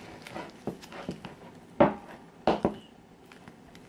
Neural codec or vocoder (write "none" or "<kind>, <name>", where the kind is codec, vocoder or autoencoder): none